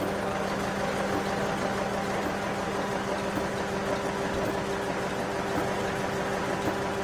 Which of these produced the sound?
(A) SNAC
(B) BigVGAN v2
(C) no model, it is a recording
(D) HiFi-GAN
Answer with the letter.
C